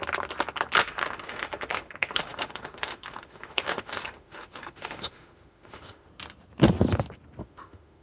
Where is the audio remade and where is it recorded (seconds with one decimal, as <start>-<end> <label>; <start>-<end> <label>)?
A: 0.0-0.8 recorded; 0.8-6.1 remade; 6.1-7.4 recorded; 7.4-8.0 remade